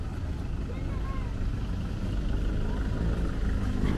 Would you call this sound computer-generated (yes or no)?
no